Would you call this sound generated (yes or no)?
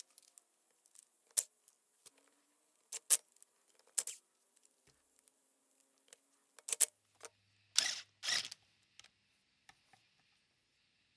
no